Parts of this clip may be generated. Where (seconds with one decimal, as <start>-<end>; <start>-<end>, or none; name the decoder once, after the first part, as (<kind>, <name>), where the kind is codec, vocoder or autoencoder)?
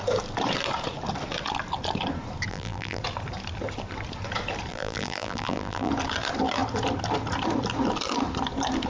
2.5-3.0 (vocoder, BigVGAN v2); 4.7-5.9